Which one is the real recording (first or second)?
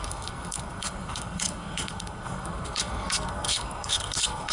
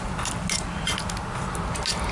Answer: second